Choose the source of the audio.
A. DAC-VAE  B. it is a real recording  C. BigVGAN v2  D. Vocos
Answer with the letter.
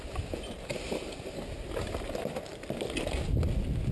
B